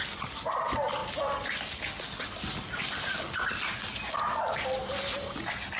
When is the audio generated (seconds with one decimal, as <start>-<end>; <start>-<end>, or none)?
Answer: none